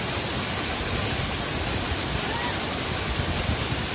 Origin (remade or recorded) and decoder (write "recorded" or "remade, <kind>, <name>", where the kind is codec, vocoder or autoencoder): recorded